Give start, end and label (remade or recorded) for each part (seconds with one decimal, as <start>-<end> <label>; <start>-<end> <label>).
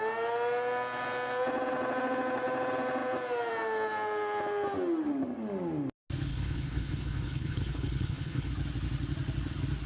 0.0-6.3 recorded; 6.3-8.5 remade; 8.5-9.9 recorded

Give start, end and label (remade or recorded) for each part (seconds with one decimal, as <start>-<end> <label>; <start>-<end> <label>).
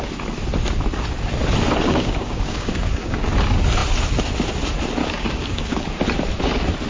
0.0-1.9 recorded; 1.9-3.3 remade; 3.3-5.0 recorded; 5.0-6.0 remade; 6.0-6.9 recorded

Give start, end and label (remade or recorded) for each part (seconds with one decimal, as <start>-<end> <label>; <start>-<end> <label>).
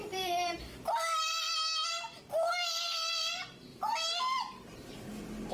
0.0-0.6 remade; 0.6-3.7 recorded; 3.7-5.5 remade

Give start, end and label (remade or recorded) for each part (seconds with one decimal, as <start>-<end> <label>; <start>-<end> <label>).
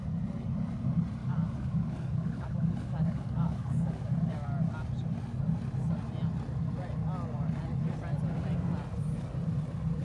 0.0-1.2 recorded; 1.2-4.1 remade; 4.1-10.0 recorded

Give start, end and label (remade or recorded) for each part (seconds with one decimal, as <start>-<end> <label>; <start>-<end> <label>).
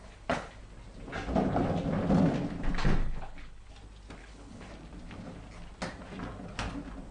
0.0-0.6 remade; 0.6-3.0 recorded; 3.0-3.7 remade; 3.7-4.2 recorded; 4.2-4.7 remade; 4.7-7.1 recorded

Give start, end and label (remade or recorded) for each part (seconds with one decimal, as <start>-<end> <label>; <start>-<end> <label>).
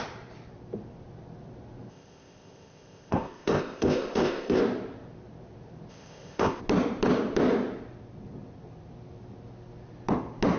0.0-1.9 recorded; 1.9-4.6 remade; 4.6-5.9 recorded; 5.9-6.6 remade; 6.6-10.6 recorded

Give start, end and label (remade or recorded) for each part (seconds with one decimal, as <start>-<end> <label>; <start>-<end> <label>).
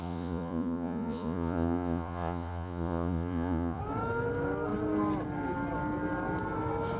0.0-3.8 remade; 3.8-7.0 recorded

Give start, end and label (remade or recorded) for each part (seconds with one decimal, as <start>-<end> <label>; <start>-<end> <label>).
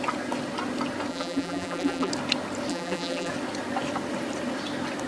0.0-1.1 recorded; 1.1-2.1 remade; 2.1-2.7 recorded; 2.7-3.3 remade; 3.3-5.1 recorded